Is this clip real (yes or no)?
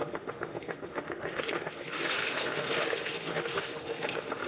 no